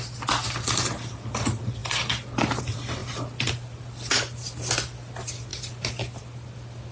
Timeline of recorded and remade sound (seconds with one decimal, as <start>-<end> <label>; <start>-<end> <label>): 0.0-6.9 recorded